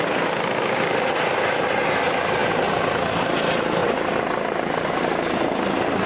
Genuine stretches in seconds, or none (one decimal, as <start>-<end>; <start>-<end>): 0.0-6.1